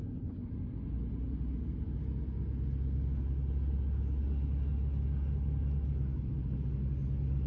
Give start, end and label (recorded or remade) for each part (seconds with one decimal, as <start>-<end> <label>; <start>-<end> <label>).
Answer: 0.0-7.5 recorded